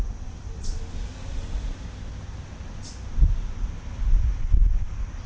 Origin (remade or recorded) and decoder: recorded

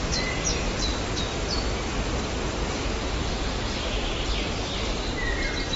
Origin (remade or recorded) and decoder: recorded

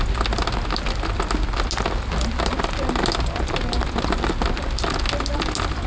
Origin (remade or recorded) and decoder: recorded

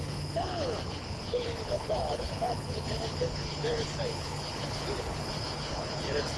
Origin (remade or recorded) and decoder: remade, codec, HILCodec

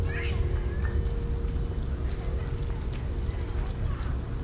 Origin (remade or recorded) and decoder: recorded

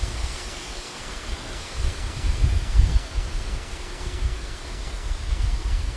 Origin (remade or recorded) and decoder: remade, codec, SNAC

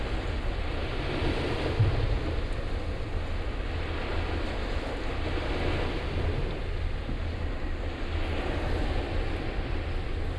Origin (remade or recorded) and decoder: recorded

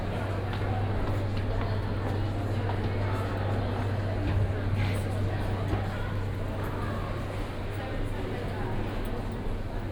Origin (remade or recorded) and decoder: recorded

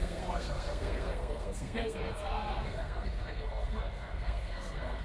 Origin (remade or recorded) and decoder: remade, codec, SNAC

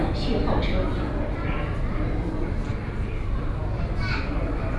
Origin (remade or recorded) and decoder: recorded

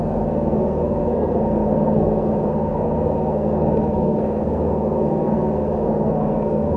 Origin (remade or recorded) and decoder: remade, codec, SNAC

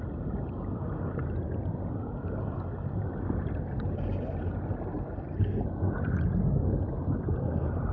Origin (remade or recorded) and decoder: recorded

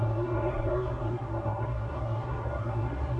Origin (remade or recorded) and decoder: remade, codec, SNAC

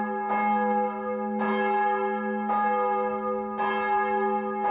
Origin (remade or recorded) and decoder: recorded